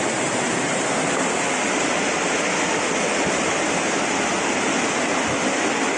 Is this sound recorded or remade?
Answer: recorded